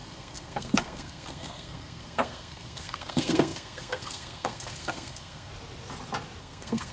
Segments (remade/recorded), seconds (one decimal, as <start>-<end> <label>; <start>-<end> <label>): 0.0-5.5 remade; 5.5-6.4 recorded; 6.4-6.9 remade